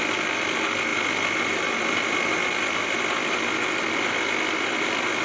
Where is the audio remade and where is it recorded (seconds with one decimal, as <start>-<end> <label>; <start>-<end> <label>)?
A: 0.0-5.2 recorded